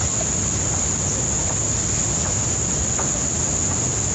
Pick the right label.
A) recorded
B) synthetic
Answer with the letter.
A